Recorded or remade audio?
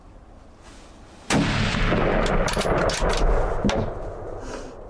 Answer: recorded